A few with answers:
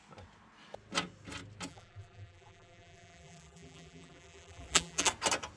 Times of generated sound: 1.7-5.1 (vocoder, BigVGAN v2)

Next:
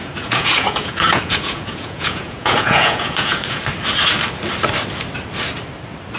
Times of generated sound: 0.0-3.6 (vocoder, Vocos)

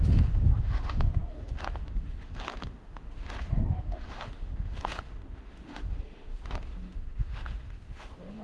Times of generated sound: 0.0-8.4 (autoencoder, DAC-VAE)